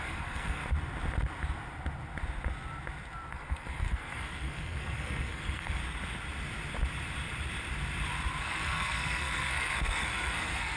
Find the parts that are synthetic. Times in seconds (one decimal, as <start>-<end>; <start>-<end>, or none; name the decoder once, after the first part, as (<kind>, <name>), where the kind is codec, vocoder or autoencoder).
0.0-0.6 (codec, SNAC); 3.3-5.8; 8.4-10.8